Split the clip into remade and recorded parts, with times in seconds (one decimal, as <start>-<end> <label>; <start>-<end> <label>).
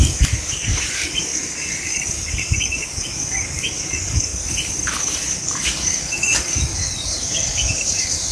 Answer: 0.0-4.3 remade; 4.3-5.0 recorded; 5.0-8.3 remade